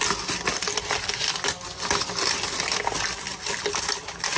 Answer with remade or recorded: recorded